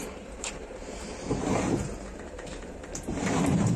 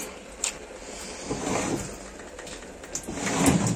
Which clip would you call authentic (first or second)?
second